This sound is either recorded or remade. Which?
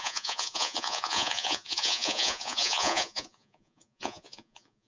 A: remade